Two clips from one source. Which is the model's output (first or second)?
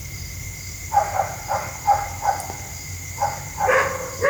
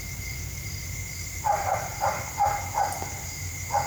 second